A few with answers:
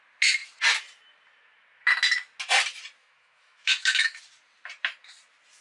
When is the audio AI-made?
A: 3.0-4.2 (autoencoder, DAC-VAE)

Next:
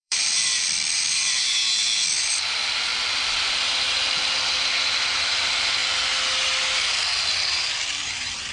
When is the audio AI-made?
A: 0.0-1.2 (vocoder, BigVGAN v2); 2.2-2.9; 4.6-5.8; 7.3-8.5

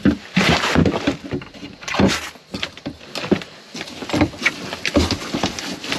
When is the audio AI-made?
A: none

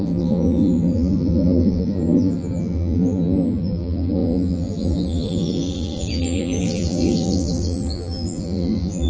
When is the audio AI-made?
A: 0.0-9.1 (vocoder, BigVGAN v2)

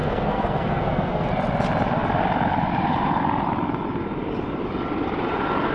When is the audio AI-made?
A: 0.0-1.3 (codec, SNAC)

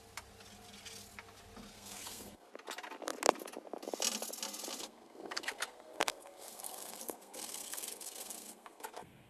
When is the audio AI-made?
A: 1.7-2.5 (codec, SNAC); 4.8-9.3

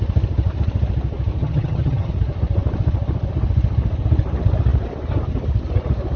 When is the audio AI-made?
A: 1.4-2.1 (vocoder, HiFi-GAN)